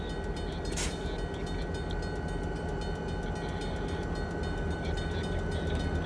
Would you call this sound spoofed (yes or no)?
no